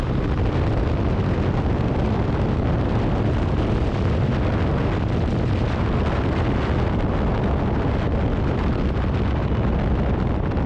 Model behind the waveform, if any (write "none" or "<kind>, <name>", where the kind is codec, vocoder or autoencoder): none